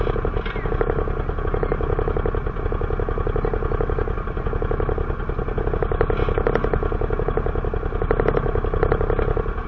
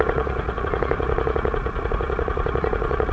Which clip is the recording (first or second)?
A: first